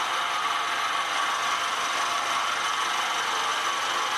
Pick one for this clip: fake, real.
real